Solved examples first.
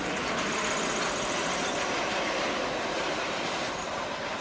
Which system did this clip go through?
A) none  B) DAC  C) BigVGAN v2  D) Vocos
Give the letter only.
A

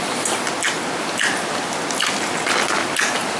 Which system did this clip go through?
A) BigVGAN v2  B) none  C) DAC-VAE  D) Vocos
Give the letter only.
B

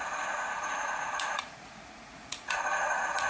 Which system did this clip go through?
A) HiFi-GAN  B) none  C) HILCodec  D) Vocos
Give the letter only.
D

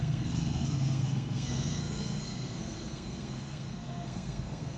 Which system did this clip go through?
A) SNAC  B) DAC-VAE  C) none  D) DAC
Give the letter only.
A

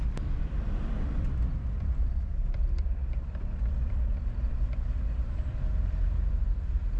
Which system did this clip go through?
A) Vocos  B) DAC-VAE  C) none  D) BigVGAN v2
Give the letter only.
D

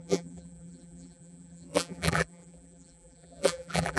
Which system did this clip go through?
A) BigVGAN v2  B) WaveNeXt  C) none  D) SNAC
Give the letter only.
A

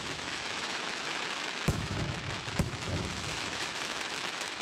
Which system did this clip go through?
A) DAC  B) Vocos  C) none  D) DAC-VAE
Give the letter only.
D